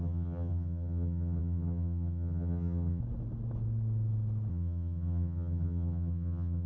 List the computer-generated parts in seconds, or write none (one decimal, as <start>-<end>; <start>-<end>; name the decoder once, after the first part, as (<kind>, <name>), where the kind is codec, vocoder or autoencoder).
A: 0.0-3.0 (vocoder, HiFi-GAN); 4.5-6.7